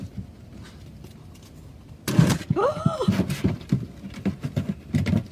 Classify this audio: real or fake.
real